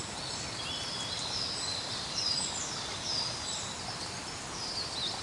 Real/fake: fake